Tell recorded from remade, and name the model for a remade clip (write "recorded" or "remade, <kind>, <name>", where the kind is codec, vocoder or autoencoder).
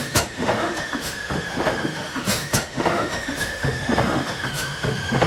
remade, autoencoder, DAC-VAE